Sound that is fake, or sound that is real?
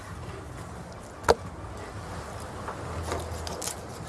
real